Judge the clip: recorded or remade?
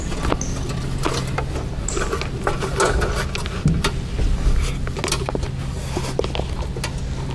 recorded